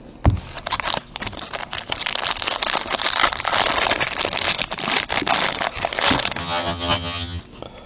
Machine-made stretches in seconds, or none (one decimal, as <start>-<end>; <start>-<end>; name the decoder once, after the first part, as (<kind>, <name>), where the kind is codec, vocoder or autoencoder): 6.4-7.4 (vocoder, HiFi-GAN)